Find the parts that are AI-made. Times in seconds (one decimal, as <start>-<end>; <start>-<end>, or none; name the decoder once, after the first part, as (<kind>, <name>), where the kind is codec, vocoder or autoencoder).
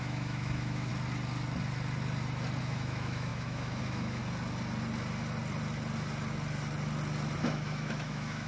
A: 0.0-0.9 (autoencoder, DAC-VAE); 2.6-4.2; 7.4-8.5